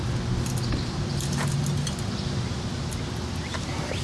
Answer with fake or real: real